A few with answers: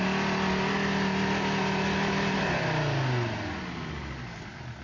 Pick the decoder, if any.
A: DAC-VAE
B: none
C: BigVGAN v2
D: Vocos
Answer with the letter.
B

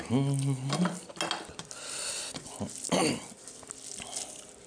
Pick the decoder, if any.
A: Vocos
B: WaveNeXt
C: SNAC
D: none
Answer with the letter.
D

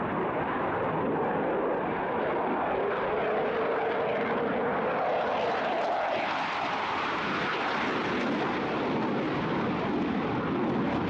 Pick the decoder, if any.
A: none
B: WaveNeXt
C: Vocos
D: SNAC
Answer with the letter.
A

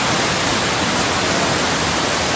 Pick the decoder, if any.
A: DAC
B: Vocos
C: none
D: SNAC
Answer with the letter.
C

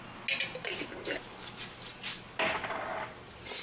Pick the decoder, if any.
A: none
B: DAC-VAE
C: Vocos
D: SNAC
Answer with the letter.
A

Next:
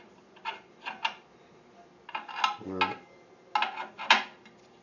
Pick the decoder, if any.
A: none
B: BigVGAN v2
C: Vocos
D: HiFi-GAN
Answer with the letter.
A